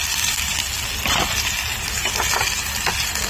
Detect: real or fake real